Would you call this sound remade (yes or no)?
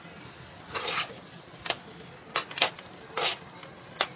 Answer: no